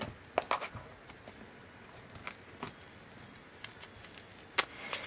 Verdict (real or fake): real